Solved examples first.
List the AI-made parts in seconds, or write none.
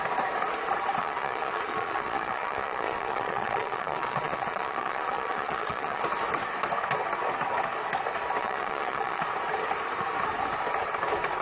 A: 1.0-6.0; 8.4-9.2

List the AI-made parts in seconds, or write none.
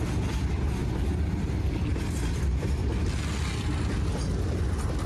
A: none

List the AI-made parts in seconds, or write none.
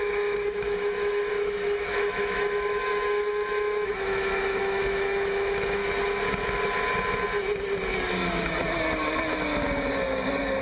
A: 0.0-5.8